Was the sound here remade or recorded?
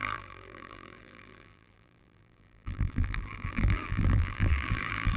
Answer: remade